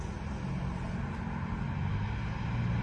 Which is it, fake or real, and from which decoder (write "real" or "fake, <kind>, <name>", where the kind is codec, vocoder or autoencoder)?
real